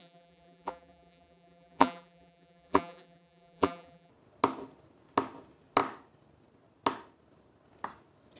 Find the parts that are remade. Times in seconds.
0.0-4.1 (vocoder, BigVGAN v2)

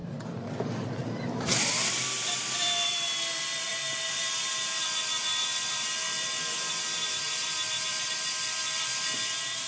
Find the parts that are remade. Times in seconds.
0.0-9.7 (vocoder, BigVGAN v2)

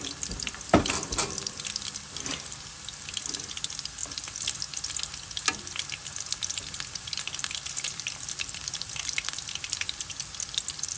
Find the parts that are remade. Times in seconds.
none

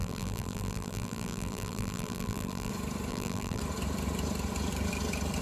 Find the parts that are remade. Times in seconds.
0.0-2.7 (vocoder, BigVGAN v2); 3.1-3.6